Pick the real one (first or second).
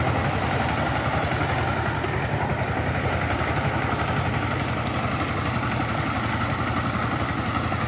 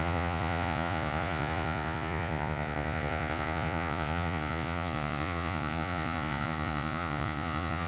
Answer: first